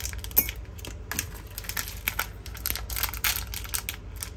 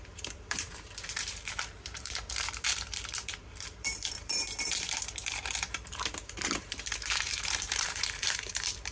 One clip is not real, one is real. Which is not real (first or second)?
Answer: second